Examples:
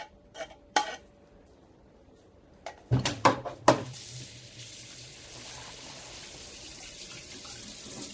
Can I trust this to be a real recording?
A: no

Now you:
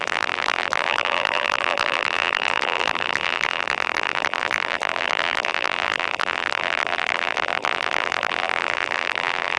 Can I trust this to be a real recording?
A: no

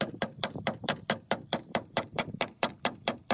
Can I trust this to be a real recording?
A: no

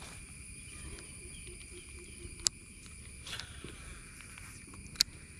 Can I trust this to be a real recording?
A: yes